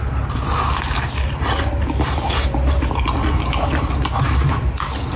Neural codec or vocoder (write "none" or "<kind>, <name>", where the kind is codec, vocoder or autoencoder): none